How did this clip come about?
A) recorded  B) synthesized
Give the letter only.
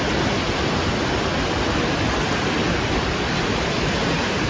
A